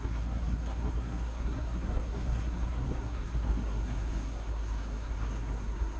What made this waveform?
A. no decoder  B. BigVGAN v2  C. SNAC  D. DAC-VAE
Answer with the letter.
C